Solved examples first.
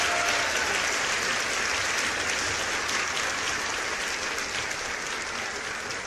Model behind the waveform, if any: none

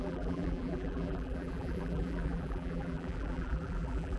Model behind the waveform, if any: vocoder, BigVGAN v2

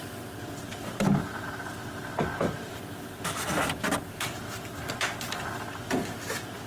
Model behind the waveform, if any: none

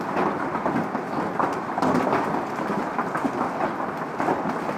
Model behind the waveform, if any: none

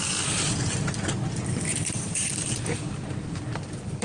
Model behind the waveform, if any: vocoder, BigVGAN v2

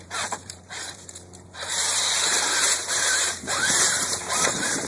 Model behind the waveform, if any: vocoder, BigVGAN v2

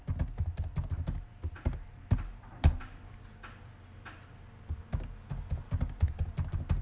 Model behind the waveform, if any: none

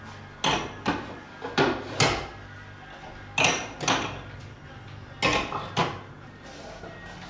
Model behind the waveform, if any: none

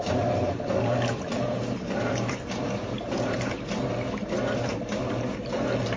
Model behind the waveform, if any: vocoder, BigVGAN v2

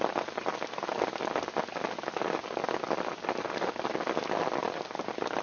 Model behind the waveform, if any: none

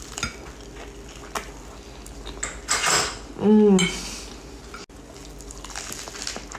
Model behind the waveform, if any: none